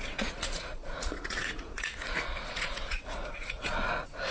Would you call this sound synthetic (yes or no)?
yes